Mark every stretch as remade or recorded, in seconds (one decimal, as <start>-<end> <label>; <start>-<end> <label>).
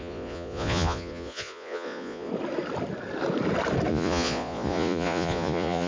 0.0-2.3 remade; 2.3-3.9 recorded; 3.9-5.9 remade